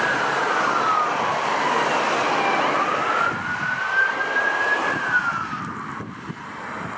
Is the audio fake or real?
real